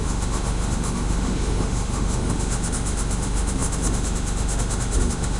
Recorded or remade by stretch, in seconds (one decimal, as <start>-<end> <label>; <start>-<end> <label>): 0.0-5.4 remade